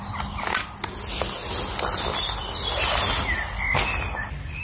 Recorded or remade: recorded